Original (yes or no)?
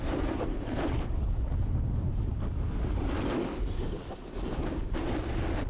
yes